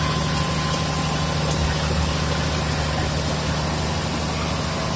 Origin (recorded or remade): recorded